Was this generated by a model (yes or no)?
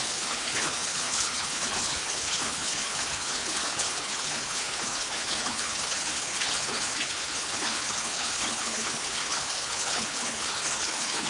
yes